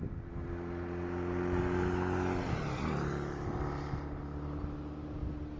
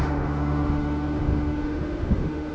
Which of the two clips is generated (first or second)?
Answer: second